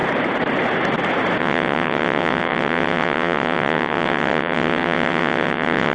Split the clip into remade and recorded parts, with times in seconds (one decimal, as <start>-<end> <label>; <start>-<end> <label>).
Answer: 0.0-1.4 recorded; 1.4-5.9 remade